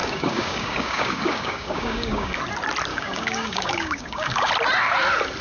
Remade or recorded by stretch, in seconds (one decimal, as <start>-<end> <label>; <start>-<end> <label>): 0.0-2.4 remade; 2.4-2.9 recorded; 2.9-4.5 remade; 4.5-5.4 recorded